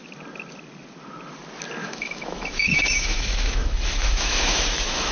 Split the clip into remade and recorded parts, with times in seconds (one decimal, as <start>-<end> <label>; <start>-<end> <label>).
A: 0.0-1.8 recorded; 1.8-5.1 remade